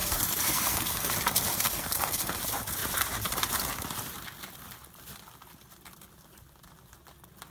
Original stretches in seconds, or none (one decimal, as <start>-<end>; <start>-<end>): 1.1-1.5; 2.4-7.5